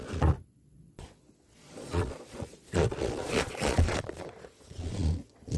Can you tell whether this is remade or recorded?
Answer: remade